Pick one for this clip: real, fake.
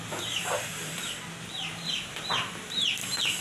fake